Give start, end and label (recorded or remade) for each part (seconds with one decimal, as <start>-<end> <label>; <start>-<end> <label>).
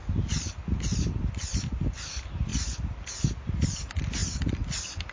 0.0-5.1 recorded